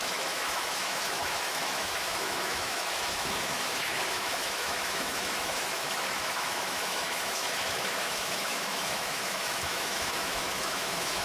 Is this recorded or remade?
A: remade